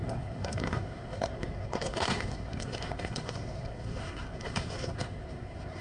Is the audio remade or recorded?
remade